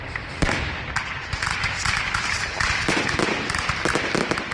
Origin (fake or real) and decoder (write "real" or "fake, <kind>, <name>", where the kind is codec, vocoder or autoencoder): real